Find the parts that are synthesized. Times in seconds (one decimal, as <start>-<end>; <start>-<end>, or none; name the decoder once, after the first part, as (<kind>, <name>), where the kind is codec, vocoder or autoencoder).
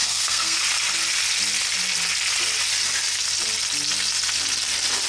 0.0-0.6 (codec, SNAC)